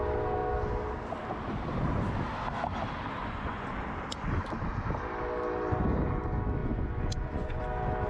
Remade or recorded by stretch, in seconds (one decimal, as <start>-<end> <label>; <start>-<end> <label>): 0.0-3.2 recorded; 3.2-3.7 remade; 3.7-6.6 recorded; 6.6-7.6 remade; 7.6-8.1 recorded